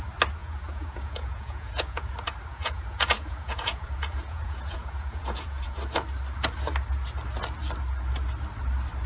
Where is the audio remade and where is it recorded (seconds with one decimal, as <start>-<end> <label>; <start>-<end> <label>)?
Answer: 0.0-0.4 recorded; 0.4-2.1 remade; 2.1-2.5 recorded; 2.5-5.7 remade; 5.7-9.1 recorded